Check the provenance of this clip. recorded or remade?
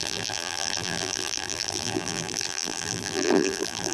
remade